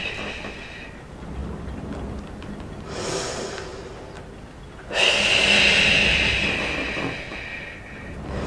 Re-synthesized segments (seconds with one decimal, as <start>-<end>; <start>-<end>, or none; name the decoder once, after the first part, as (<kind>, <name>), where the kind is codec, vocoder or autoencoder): none